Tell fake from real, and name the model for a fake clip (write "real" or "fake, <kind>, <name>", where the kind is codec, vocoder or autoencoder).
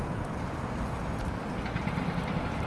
real